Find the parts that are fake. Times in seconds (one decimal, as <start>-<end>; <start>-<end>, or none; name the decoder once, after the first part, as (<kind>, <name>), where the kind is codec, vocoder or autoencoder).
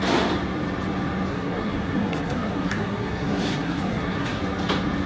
1.3-4.4 (codec, SNAC)